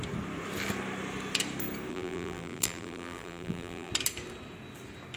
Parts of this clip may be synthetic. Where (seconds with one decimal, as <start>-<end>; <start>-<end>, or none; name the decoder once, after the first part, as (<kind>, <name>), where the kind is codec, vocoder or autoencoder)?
1.9-3.9 (vocoder, BigVGAN v2)